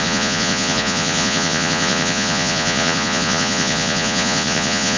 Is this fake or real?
fake